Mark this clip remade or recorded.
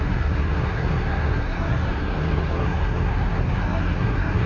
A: remade